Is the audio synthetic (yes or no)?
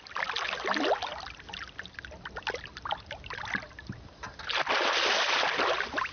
no